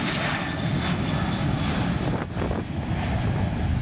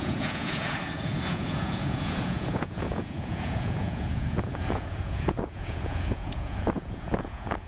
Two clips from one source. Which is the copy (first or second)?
second